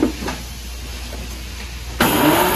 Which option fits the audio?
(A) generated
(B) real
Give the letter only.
B